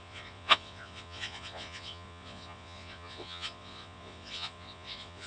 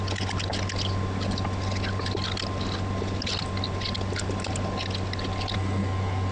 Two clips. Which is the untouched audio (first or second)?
second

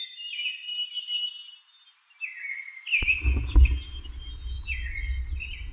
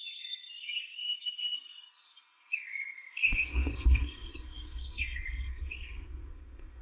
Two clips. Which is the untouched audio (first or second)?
first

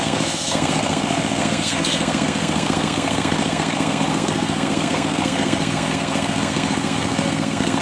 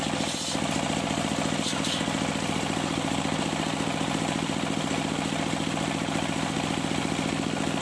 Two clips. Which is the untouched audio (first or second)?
second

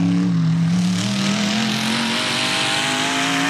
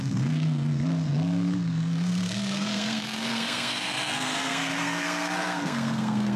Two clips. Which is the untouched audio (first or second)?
first